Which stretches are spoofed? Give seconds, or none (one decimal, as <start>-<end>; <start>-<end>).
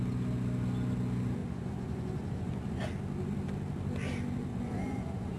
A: 1.4-2.9; 4.5-5.4